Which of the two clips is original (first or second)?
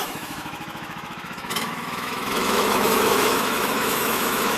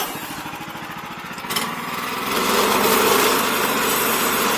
second